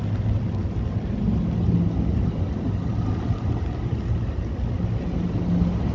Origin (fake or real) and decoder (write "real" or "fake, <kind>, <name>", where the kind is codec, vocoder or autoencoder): real